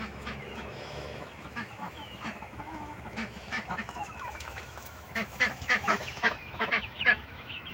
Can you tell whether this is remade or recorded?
remade